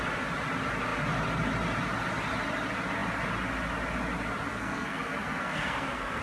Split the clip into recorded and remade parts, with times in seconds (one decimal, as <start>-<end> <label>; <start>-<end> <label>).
0.0-4.5 recorded; 4.5-6.2 remade